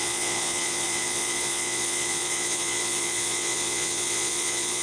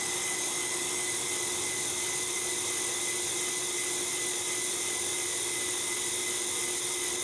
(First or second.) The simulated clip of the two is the first